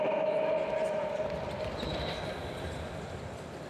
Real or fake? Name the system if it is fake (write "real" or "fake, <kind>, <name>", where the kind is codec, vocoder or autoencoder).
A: fake, vocoder, BigVGAN v2